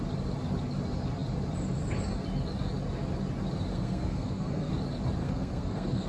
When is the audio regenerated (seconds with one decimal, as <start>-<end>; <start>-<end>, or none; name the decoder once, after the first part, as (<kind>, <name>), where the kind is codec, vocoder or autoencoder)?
3.7-4.7 (codec, SNAC); 5.2-6.1